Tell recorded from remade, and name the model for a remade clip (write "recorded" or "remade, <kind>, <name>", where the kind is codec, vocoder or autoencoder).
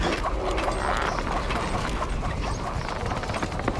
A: recorded